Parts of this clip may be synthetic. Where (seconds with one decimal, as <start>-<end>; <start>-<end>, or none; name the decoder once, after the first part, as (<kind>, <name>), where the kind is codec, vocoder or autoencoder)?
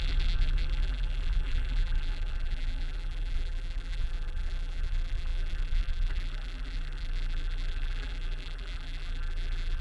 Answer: 0.0-9.8 (vocoder, BigVGAN v2)